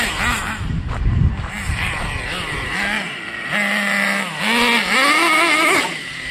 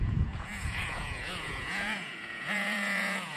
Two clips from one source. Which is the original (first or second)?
first